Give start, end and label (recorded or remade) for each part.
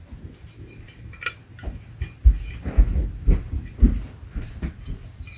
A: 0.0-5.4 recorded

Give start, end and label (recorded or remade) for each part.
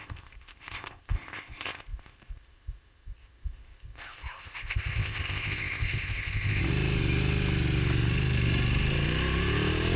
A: 0.0-6.6 remade; 6.6-10.0 recorded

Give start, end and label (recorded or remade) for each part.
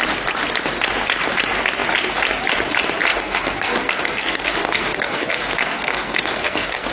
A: 0.0-3.1 recorded; 3.1-6.9 remade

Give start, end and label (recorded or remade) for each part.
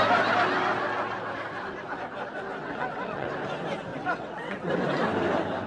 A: 0.0-2.6 recorded; 2.6-3.3 remade; 3.3-3.9 recorded; 3.9-4.7 remade; 4.7-5.7 recorded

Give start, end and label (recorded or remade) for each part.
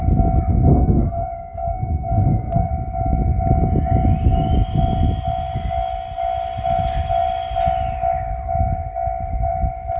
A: 0.0-0.7 recorded; 0.7-2.7 remade; 2.7-10.0 recorded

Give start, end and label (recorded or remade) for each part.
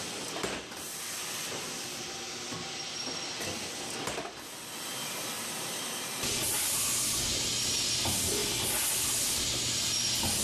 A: 0.0-10.4 recorded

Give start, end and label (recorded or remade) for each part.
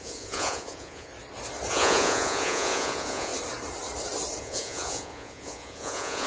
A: 0.0-1.1 remade; 1.1-1.7 recorded; 1.7-3.3 remade; 3.3-4.4 recorded; 4.4-6.3 remade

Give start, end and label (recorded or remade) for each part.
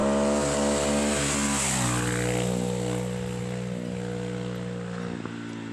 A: 0.0-5.7 recorded